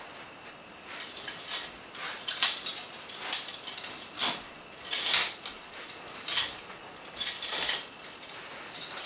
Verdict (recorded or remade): recorded